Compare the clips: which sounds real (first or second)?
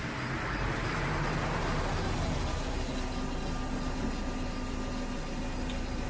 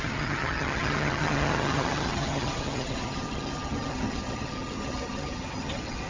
first